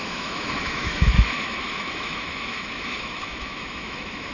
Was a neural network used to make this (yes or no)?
yes